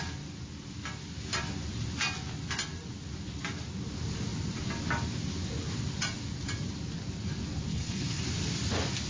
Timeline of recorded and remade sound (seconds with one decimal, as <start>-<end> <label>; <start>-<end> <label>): 0.0-7.7 recorded; 7.7-8.2 remade; 8.2-9.1 recorded